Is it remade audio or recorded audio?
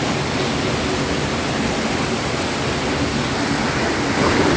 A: recorded